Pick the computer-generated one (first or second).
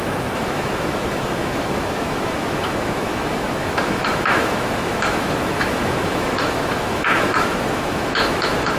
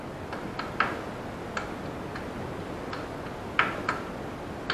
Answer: first